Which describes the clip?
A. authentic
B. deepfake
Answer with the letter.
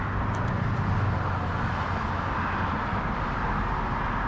A